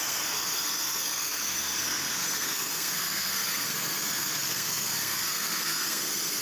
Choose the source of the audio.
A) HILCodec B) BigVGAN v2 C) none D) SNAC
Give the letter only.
D